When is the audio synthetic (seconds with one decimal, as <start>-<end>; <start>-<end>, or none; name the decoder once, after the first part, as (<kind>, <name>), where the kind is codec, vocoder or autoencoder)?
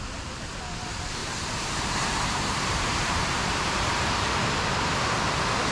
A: 1.2-4.6 (vocoder, BigVGAN v2)